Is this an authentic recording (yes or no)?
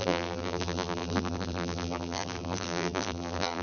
no